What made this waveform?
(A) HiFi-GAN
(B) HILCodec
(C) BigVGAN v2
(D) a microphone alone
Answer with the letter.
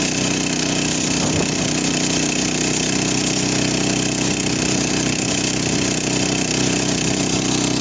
D